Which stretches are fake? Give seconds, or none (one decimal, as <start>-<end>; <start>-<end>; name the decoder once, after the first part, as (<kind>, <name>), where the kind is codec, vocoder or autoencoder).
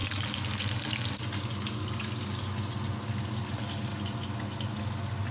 none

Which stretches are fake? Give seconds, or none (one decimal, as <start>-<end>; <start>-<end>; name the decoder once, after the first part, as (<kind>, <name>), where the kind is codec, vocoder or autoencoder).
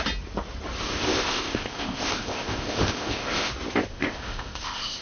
0.8-3.5 (codec, ZipCodec); 3.9-5.0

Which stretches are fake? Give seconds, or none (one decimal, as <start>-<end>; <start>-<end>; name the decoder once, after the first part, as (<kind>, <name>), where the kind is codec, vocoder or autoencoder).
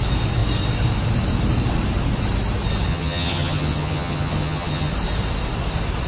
2.9-4.9 (vocoder, HiFi-GAN)